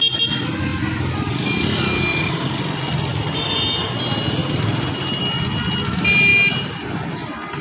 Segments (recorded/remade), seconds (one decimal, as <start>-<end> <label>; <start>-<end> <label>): 0.0-2.1 recorded; 2.1-2.6 remade; 2.6-4.4 recorded; 4.4-5.2 remade; 5.2-7.6 recorded